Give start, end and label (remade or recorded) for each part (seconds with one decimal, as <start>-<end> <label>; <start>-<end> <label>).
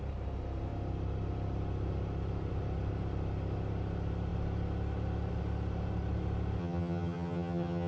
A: 0.0-6.6 recorded; 6.6-7.9 remade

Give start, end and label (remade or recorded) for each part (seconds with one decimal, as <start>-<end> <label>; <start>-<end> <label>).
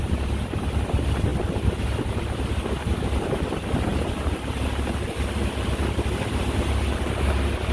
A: 0.0-7.7 recorded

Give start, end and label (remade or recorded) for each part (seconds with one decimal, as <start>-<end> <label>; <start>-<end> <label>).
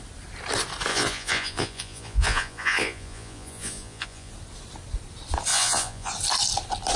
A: 0.0-0.9 recorded; 0.9-4.3 remade; 4.3-5.5 recorded; 5.5-6.1 remade; 6.1-7.0 recorded